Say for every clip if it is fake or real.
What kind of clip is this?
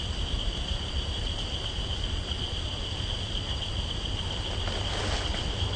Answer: real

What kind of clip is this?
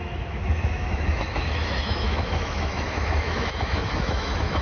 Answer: fake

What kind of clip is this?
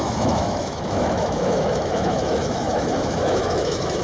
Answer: fake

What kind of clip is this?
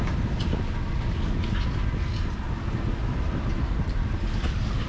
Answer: real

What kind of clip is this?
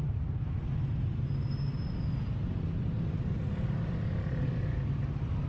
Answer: real